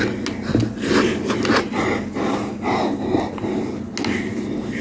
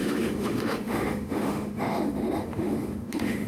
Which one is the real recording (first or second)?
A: first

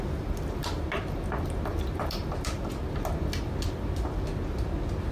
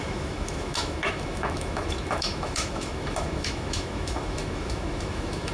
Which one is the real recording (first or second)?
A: first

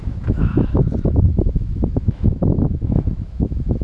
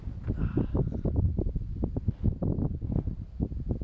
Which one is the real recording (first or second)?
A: second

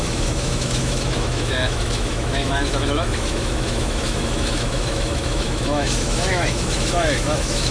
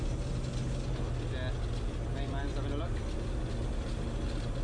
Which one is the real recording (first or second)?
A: second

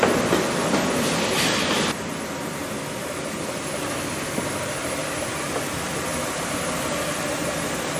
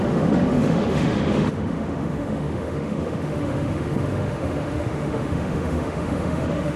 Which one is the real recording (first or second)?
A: first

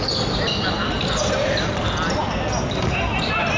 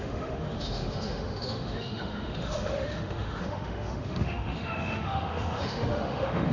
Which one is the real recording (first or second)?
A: first